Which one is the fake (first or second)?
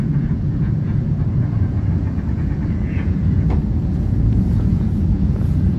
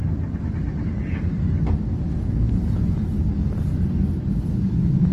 first